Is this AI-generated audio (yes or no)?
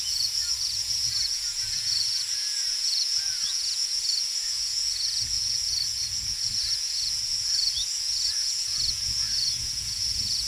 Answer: yes